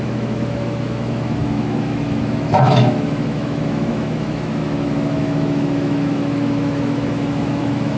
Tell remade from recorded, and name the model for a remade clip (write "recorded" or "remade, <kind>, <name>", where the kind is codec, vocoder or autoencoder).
remade, autoencoder, DAC-VAE